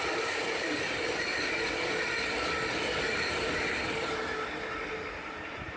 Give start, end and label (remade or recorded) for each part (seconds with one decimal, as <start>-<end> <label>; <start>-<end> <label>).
0.0-1.3 remade; 1.3-4.7 recorded; 4.7-5.8 remade